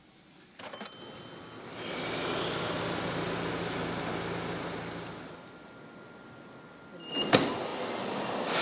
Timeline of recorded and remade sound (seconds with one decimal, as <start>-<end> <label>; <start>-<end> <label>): 0.0-8.6 recorded